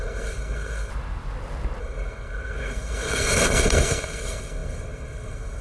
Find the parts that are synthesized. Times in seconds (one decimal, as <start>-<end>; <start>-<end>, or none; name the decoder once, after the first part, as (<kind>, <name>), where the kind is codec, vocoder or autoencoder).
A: 0.0-0.9 (codec, SNAC); 1.8-5.6